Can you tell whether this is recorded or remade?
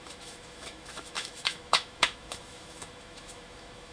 remade